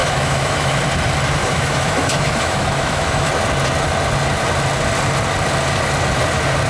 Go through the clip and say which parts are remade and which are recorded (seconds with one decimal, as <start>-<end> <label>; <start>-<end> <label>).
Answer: 0.0-0.8 remade; 0.8-1.4 recorded; 1.4-3.3 remade; 3.3-6.7 recorded